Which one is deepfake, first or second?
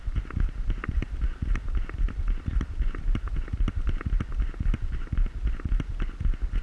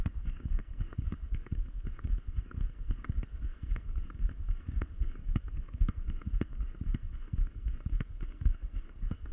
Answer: second